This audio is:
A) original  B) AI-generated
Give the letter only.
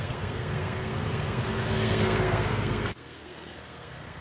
B